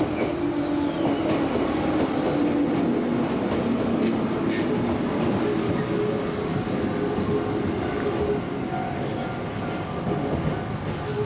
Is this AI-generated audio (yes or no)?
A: no